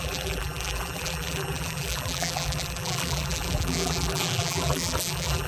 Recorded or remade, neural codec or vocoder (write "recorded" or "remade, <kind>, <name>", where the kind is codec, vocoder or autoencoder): remade, vocoder, BigVGAN v2